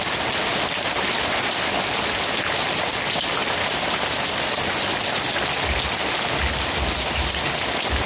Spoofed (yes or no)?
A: no